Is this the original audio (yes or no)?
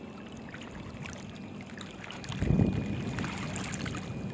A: yes